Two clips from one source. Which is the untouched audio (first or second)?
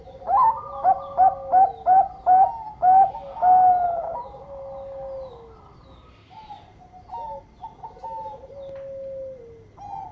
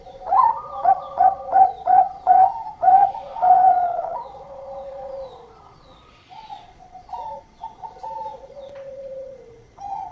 first